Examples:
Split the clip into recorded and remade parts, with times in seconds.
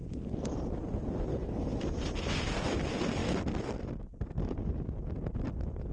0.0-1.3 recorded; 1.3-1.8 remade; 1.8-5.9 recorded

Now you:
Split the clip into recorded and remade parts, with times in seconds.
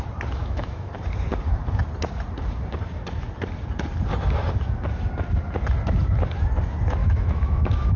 0.0-0.4 recorded; 0.4-0.9 remade; 0.9-7.0 recorded; 7.0-8.0 remade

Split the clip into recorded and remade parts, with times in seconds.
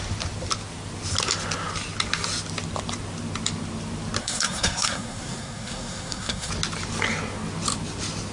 0.0-4.2 recorded; 4.2-6.5 remade; 6.5-8.3 recorded